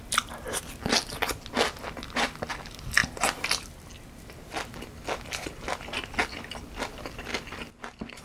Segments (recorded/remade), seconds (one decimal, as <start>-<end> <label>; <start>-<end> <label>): 0.0-8.2 recorded